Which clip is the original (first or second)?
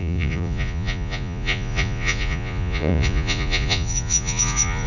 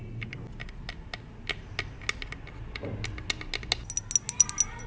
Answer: second